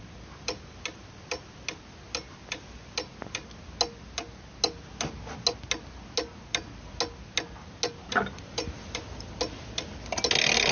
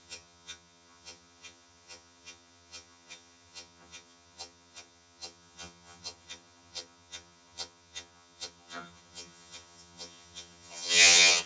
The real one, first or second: first